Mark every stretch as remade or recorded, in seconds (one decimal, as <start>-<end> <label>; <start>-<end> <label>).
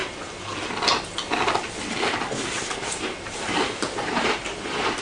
0.0-3.0 recorded; 3.0-5.0 remade